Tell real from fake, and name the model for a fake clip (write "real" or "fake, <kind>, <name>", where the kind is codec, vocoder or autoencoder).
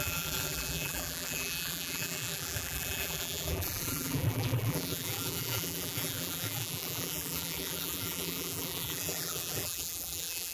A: fake, vocoder, BigVGAN v2